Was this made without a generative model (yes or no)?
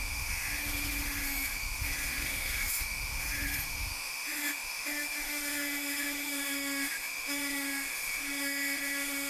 no